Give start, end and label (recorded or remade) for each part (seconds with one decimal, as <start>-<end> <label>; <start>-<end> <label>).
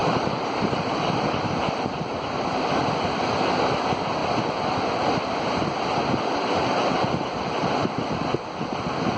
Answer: 0.0-1.6 remade; 1.6-9.2 recorded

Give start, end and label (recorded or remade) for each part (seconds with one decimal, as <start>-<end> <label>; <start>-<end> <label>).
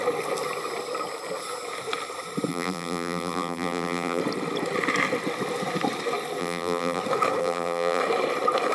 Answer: 0.0-2.5 recorded; 2.5-4.2 remade; 4.2-6.4 recorded; 6.4-7.0 remade; 7.0-7.4 recorded; 7.4-8.0 remade; 8.0-8.7 recorded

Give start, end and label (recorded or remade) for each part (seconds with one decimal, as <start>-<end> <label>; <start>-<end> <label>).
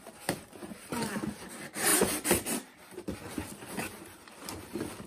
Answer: 0.0-0.6 recorded; 0.6-1.4 remade; 1.4-1.9 recorded; 1.9-4.3 remade; 4.3-5.1 recorded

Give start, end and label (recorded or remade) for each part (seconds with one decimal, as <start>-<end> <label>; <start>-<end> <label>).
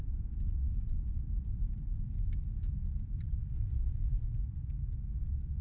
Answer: 0.0-0.6 recorded; 0.6-4.0 remade; 4.0-5.6 recorded